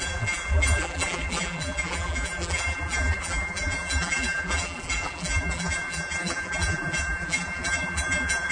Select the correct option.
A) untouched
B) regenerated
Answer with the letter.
B